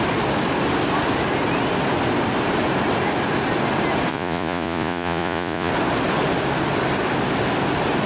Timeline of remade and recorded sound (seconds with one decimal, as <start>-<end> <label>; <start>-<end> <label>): 0.0-4.1 recorded; 4.1-5.7 remade; 5.7-8.1 recorded